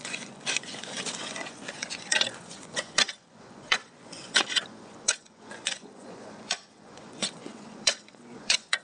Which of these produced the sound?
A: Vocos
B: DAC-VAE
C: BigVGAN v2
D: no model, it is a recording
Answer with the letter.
A